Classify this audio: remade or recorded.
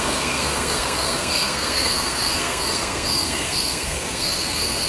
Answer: remade